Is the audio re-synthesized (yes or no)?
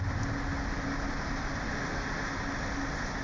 no